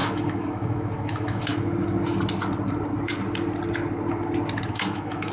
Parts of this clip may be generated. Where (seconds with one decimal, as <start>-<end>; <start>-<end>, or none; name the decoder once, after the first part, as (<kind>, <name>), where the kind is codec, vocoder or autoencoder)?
0.0-1.5 (autoencoder, DAC-VAE); 4.7-5.3